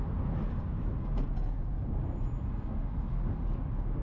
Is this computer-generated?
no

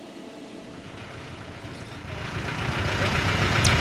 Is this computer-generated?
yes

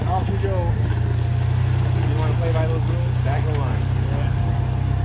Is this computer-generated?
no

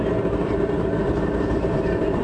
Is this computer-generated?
yes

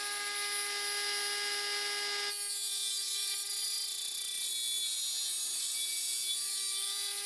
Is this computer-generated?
no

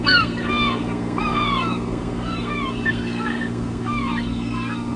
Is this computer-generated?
yes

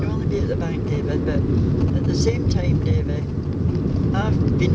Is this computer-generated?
no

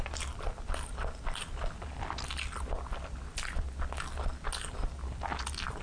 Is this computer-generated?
no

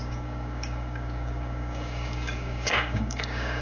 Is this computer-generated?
yes